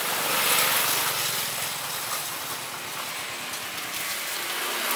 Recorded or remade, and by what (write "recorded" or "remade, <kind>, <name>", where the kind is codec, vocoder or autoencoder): recorded